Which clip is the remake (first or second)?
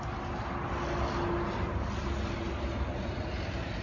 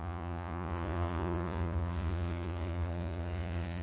second